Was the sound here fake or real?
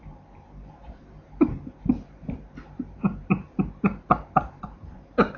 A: fake